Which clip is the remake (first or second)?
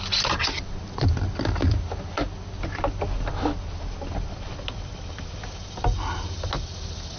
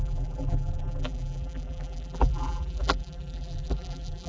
second